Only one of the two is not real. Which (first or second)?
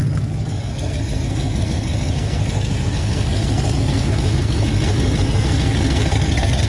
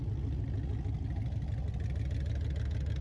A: first